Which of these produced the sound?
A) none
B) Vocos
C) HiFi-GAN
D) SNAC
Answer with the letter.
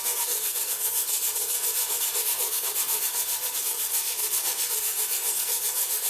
D